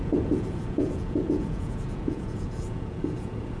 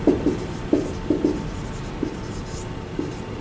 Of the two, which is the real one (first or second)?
second